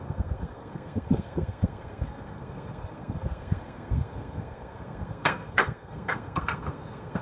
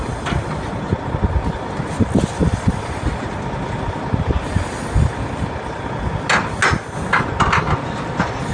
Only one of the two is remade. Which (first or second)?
first